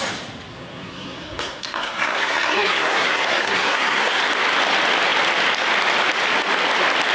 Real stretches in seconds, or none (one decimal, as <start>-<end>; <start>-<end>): 0.0-0.5; 4.2-7.1